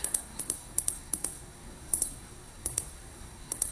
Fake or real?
fake